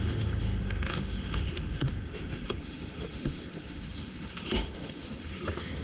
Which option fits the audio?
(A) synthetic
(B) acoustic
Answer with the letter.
A